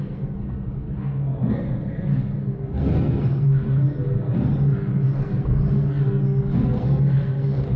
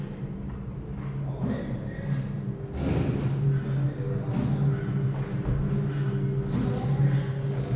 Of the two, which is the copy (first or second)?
first